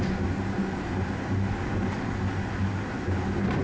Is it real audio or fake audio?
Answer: real